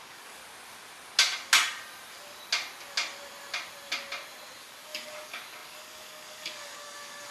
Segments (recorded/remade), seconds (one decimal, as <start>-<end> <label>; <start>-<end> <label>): 0.0-0.4 remade; 0.4-4.6 recorded; 4.6-7.3 remade